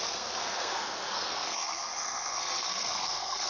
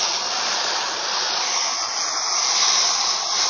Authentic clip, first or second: second